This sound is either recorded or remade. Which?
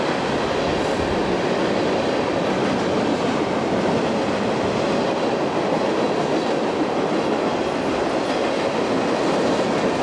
recorded